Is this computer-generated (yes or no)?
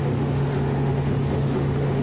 yes